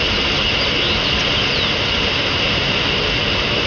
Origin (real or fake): real